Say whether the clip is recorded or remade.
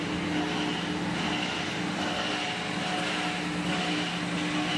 recorded